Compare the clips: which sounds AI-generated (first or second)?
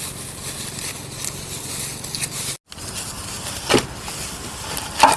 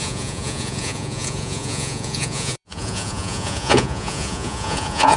second